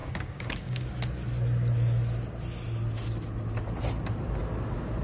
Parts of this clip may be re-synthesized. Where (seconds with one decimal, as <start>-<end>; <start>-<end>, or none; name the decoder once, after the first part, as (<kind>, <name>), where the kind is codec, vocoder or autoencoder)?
0.0-0.9 (codec, DAC)

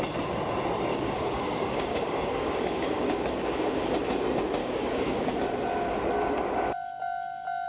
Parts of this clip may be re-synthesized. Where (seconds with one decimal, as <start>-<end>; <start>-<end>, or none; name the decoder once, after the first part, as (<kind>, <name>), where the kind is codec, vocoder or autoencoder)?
0.9-3.9 (codec, DAC); 4.6-5.4

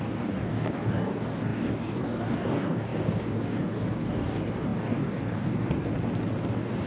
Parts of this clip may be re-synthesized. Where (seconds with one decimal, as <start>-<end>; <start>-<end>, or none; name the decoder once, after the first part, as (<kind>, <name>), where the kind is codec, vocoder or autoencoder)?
0.0-5.9 (codec, DAC); 6.5-6.9

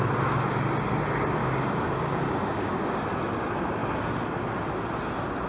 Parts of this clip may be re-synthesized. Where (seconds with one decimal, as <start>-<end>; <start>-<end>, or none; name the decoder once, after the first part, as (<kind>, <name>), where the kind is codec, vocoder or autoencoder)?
1.4-3.0 (codec, DAC)

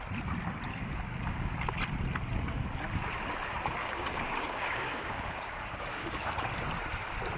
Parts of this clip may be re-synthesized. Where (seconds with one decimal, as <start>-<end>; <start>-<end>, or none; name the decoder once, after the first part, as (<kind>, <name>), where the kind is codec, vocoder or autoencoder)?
0.7-1.5 (codec, DAC); 3.8-6.3

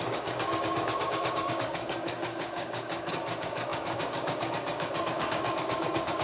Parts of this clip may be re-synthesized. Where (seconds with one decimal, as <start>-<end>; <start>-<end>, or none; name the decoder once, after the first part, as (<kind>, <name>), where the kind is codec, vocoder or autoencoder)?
0.0-6.2 (codec, DAC)